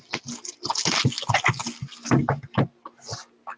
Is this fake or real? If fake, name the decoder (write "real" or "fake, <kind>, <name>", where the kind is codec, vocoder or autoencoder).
real